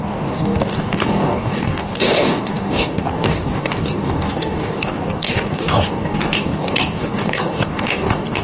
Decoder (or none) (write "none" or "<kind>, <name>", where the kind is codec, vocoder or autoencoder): codec, DAC